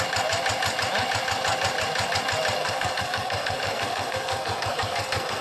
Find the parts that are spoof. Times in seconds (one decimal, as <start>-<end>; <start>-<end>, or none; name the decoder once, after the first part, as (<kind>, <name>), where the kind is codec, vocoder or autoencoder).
2.6-5.4 (codec, SNAC)